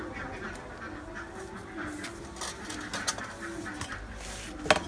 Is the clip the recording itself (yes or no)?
yes